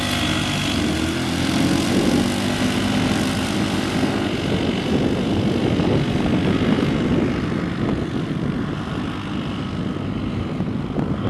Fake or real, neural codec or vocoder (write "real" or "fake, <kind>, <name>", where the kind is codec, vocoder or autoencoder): real